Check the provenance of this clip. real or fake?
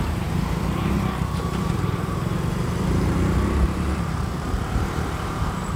fake